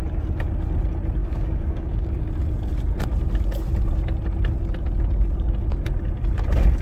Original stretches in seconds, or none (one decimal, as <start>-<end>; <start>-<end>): 0.0-1.2; 2.3-6.8